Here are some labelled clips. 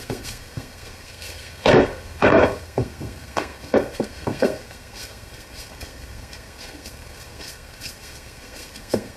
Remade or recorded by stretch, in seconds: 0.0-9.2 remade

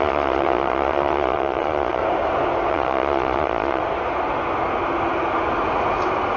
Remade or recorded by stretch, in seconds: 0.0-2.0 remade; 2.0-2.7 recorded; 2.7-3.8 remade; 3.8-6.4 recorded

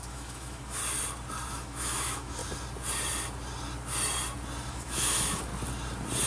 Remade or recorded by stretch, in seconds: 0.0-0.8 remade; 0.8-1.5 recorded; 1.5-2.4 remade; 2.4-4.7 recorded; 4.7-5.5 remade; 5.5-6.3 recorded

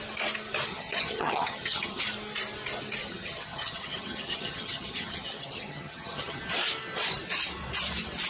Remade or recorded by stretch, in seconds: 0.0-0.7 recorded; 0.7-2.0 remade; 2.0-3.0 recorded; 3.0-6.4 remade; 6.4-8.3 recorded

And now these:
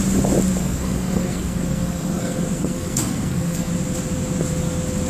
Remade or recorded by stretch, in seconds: 0.0-0.6 recorded; 0.6-3.7 remade; 3.7-5.1 recorded

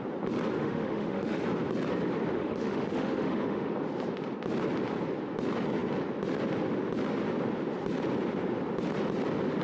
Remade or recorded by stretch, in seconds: 0.0-0.6 recorded; 0.6-1.4 remade; 1.4-2.3 recorded; 2.3-3.7 remade; 3.7-9.6 recorded